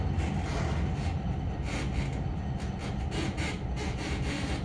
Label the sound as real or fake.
real